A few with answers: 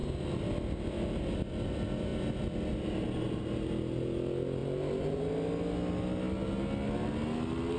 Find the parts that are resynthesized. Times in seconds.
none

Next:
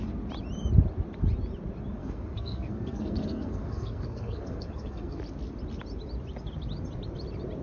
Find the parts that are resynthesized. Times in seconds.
2.0-5.2 (codec, SNAC)

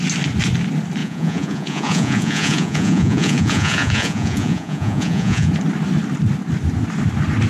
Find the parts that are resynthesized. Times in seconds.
1.0-5.5 (vocoder, Vocos)

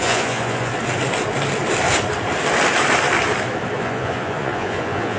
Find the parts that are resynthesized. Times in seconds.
0.0-0.7 (vocoder, Vocos); 3.8-5.2

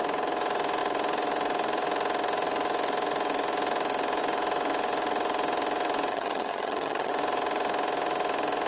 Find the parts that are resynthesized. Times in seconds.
6.1-7.1 (vocoder, HiFi-GAN)

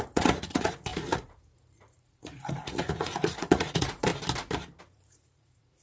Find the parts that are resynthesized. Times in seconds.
0.0-4.1 (vocoder, Vocos); 4.8-5.8

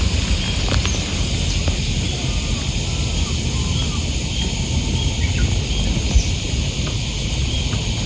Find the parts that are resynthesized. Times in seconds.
none

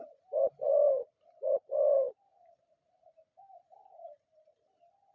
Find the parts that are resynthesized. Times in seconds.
0.0-5.1 (vocoder, BigVGAN v2)